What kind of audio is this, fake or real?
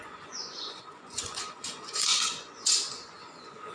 fake